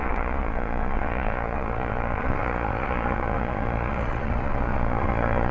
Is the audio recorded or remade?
remade